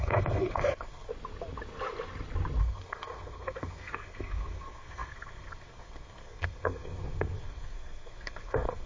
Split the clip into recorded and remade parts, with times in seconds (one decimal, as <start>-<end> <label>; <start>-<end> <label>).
0.0-1.1 remade; 1.1-2.6 recorded; 2.6-8.9 remade